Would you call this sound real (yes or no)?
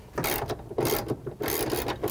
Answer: yes